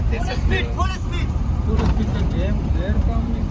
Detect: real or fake fake